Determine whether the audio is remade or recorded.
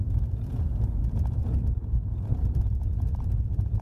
remade